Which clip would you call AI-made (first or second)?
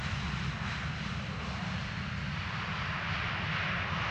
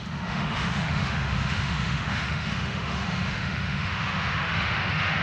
second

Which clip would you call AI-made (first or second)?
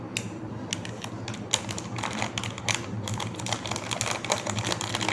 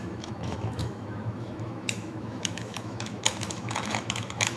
second